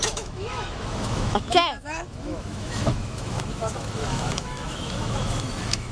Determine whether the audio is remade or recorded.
remade